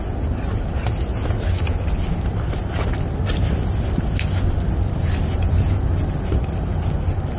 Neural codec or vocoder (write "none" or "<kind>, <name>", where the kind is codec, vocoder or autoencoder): none